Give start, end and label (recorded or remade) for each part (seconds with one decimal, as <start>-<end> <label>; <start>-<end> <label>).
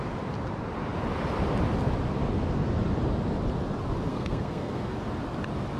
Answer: 0.0-4.1 recorded; 4.1-4.9 remade; 4.9-5.8 recorded